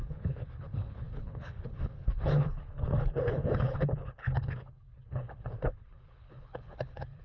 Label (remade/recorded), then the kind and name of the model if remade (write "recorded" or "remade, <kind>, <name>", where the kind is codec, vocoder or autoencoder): remade, codec, HILCodec